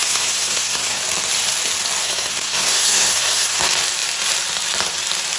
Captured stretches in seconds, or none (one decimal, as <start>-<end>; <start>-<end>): 1.0-2.0; 3.6-5.4